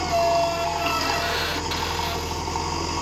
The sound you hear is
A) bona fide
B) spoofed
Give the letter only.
A